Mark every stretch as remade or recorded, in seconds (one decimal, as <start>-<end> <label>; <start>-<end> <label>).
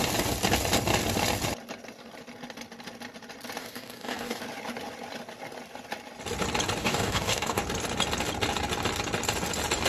0.0-3.6 recorded; 3.6-4.4 remade; 4.4-6.8 recorded; 6.8-7.6 remade; 7.6-9.9 recorded